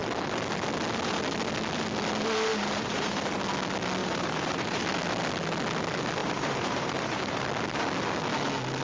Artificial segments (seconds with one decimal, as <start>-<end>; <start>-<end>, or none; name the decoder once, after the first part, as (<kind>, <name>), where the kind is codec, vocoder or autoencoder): 2.5-3.4 (vocoder, BigVGAN v2); 4.0-4.8; 6.2-7.4